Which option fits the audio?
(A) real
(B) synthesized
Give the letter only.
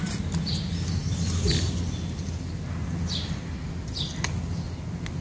A